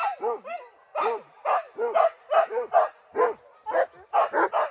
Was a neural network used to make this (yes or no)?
no